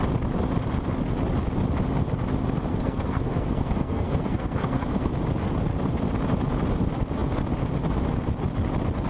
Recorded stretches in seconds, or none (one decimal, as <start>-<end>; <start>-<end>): 0.0-2.7; 5.1-9.1